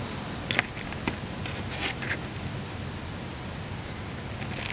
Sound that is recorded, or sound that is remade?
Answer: recorded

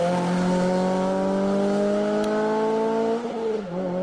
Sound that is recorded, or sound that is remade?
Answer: recorded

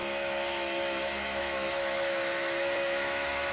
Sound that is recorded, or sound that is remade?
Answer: remade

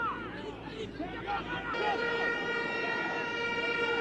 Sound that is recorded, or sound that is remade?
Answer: recorded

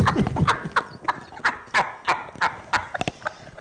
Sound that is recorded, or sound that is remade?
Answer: recorded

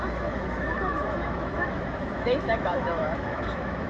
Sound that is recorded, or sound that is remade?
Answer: remade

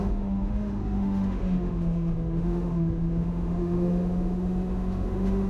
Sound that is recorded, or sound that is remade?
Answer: remade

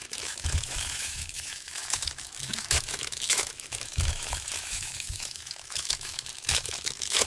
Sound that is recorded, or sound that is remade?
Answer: remade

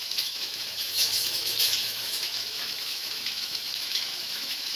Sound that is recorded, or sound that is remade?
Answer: remade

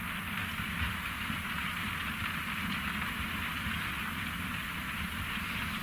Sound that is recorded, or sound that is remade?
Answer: recorded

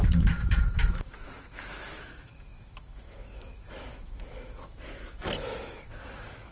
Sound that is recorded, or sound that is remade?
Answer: remade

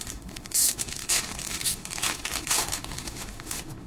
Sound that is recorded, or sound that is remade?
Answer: remade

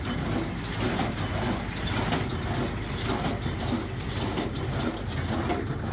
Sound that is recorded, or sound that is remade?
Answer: recorded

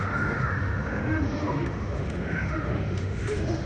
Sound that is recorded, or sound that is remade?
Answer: remade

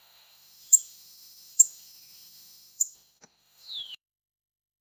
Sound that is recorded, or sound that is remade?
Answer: remade